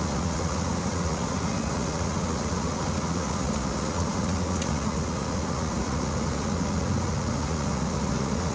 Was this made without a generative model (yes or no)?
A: no